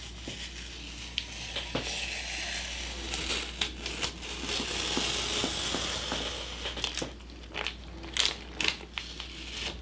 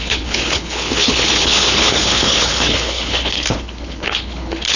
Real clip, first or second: first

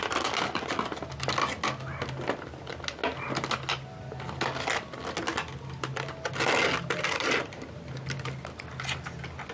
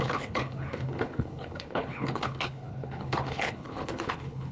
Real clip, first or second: first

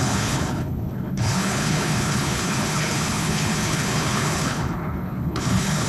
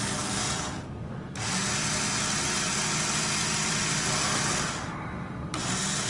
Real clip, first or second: second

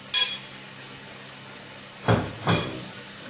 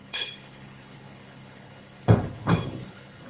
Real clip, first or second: first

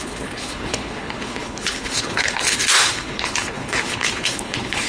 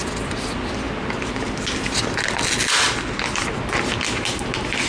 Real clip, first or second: second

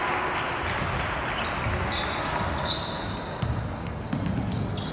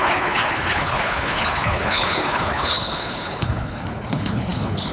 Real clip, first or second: first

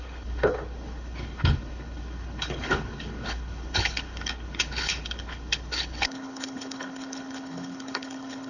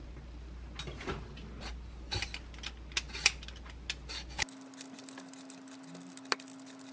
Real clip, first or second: second